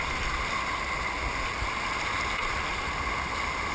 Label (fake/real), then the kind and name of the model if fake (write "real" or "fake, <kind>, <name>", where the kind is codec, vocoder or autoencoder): real